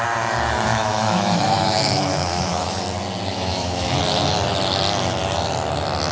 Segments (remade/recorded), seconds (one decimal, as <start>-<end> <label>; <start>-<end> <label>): 0.0-0.7 recorded; 0.7-2.8 remade; 2.8-3.3 recorded; 3.3-4.0 remade; 4.0-6.1 recorded